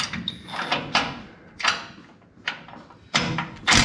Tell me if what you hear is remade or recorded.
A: recorded